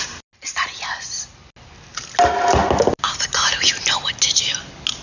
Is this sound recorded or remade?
recorded